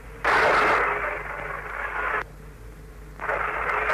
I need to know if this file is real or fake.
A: real